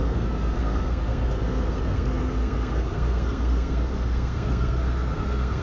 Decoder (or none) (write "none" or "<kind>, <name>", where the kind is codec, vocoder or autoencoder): codec, SNAC